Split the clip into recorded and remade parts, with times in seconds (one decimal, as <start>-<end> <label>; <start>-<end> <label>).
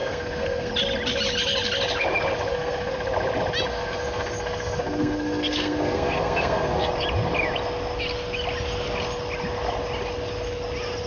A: 0.0-0.7 remade; 0.7-2.5 recorded; 2.5-3.0 remade; 3.0-3.7 recorded; 3.7-6.9 remade; 6.9-11.1 recorded